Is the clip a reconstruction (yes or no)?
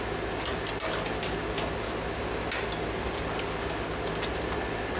no